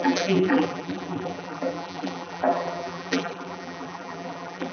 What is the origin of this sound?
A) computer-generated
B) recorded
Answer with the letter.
A